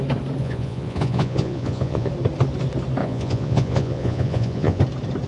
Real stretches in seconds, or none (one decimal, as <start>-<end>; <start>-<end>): 0.0-0.4; 2.1-3.0; 4.8-5.3